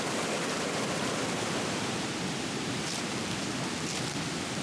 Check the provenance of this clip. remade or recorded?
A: recorded